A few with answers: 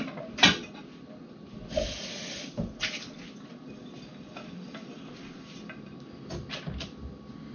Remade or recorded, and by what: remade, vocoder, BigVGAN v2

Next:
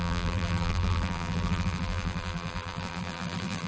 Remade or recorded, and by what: remade, vocoder, BigVGAN v2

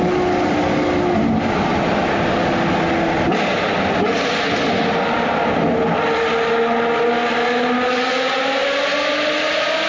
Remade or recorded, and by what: recorded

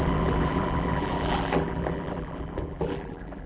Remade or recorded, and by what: remade, vocoder, BigVGAN v2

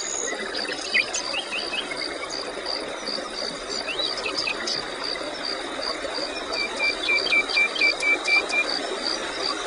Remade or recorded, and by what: recorded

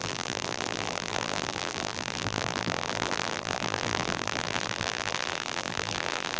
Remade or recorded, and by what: remade, vocoder, BigVGAN v2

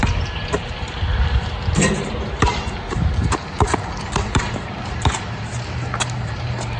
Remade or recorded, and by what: remade, vocoder, BigVGAN v2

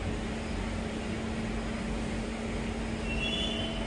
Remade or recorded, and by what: recorded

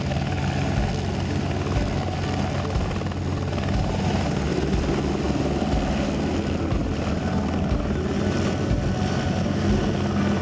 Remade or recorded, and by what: recorded